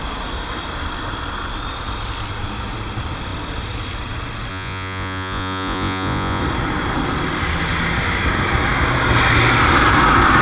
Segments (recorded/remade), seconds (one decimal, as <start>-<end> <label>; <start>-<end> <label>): 0.0-4.5 recorded; 4.5-6.4 remade; 6.4-10.4 recorded